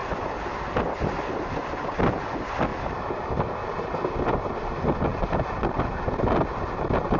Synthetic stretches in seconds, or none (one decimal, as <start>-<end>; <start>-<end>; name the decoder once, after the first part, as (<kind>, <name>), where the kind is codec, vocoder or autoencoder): none

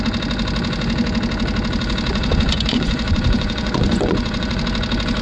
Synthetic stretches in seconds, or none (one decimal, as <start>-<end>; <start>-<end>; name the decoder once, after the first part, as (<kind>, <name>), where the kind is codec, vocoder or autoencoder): 2.1-4.6 (vocoder, Vocos)

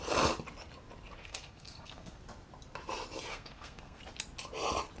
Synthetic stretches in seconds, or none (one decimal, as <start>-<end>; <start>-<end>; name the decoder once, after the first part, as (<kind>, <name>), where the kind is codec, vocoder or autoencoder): 1.2-2.2 (codec, SNAC); 3.3-4.0

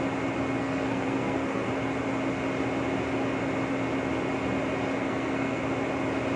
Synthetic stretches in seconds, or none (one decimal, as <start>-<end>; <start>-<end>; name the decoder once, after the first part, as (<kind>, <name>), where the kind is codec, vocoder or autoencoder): 0.6-1.7 (codec, SNAC); 5.0-5.6

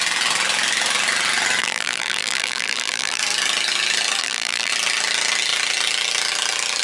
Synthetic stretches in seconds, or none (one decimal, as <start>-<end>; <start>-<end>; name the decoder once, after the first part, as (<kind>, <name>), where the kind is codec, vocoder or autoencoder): 1.6-3.2 (vocoder, BigVGAN v2); 4.2-4.7

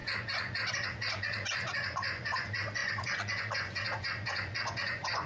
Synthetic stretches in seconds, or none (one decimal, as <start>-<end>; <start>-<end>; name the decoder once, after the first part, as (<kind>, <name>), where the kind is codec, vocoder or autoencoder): 0.0-5.3 (vocoder, Vocos)